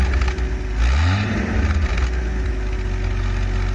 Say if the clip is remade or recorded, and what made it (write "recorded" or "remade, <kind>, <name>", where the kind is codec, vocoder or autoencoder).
recorded